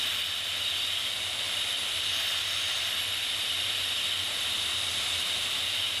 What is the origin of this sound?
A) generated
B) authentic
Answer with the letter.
B